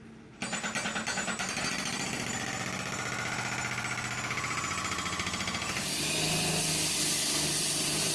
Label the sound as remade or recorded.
recorded